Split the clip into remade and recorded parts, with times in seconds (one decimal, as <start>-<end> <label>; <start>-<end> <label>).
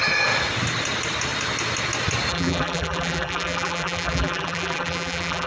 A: 0.0-2.3 recorded; 2.3-5.5 remade